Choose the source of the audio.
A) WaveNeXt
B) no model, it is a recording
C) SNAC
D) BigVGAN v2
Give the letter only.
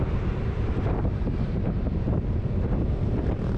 D